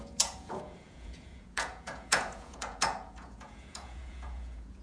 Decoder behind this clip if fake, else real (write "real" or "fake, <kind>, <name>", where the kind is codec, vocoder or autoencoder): fake, vocoder, Vocos